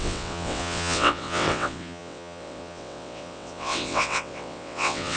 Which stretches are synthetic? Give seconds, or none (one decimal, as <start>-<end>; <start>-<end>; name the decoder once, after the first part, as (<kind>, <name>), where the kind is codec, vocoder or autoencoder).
0.0-5.2 (vocoder, WaveNeXt)